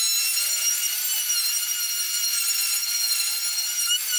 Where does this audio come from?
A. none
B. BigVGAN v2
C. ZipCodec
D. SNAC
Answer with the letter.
A